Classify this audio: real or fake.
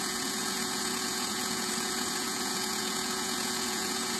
fake